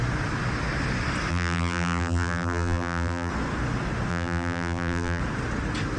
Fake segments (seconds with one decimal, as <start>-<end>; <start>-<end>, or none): 1.3-3.3; 4.1-5.2